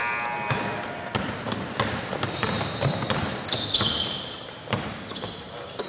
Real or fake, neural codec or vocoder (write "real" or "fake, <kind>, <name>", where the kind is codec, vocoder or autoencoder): real